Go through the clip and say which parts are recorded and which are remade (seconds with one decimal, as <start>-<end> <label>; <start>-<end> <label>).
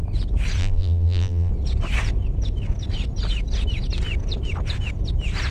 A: 0.0-0.6 recorded; 0.6-1.5 remade; 1.5-5.5 recorded